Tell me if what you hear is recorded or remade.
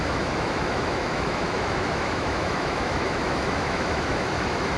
remade